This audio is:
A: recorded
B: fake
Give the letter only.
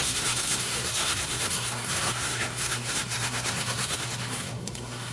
B